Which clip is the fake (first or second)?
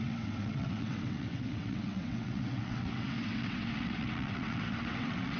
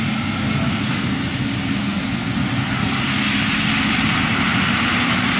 first